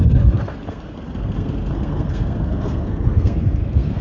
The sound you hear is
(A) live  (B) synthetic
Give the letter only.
B